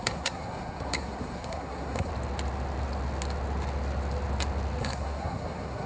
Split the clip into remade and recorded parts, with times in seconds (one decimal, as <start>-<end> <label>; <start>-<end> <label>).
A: 0.0-2.1 remade; 2.1-4.8 recorded; 4.8-5.9 remade